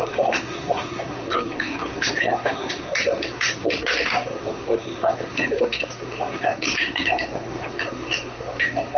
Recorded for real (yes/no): no